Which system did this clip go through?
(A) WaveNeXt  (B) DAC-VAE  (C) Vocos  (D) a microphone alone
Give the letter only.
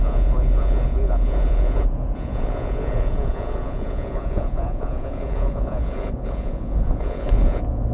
C